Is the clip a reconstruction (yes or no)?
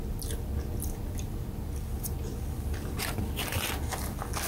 no